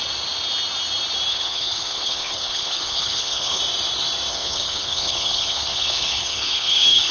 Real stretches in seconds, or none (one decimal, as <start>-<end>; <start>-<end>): 0.0-1.3; 3.6-4.3